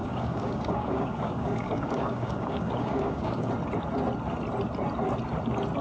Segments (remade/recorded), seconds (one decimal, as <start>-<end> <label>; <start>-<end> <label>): 0.0-3.5 remade; 3.5-5.8 recorded